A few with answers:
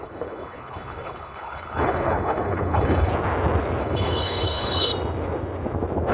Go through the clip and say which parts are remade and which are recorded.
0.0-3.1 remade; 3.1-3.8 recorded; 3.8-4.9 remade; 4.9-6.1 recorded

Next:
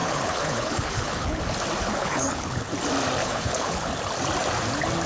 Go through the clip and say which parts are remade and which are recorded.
0.0-1.4 remade; 1.4-2.0 recorded; 2.0-2.7 remade; 2.7-3.2 recorded; 3.2-3.9 remade; 3.9-5.1 recorded

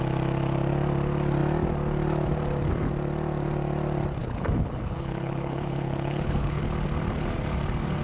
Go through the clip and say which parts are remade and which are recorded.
0.0-4.2 recorded; 4.2-6.6 remade; 6.6-8.0 recorded

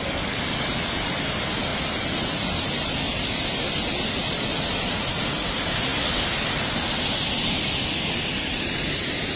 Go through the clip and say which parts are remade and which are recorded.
0.0-9.4 recorded

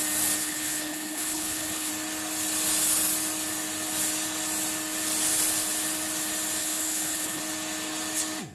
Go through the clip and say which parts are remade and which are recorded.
0.0-0.4 recorded; 0.4-1.9 remade; 1.9-6.6 recorded; 6.6-7.4 remade; 7.4-8.5 recorded

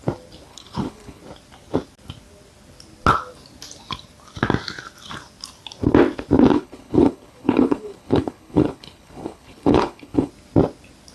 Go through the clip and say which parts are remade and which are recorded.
0.0-0.5 recorded; 0.5-1.2 remade; 1.2-6.5 recorded; 6.5-10.3 remade; 10.3-11.1 recorded

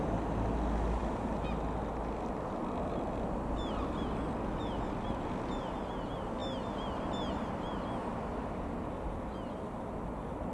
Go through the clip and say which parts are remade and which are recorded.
0.0-10.5 recorded

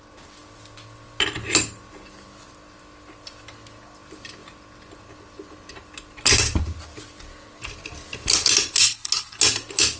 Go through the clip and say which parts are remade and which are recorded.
0.0-8.8 recorded; 8.8-9.4 remade; 9.4-10.0 recorded